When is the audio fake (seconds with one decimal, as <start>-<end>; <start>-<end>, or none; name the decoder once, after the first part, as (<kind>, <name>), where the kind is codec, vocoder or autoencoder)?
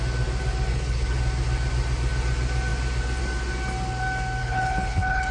0.7-1.2 (codec, HILCodec); 4.4-5.3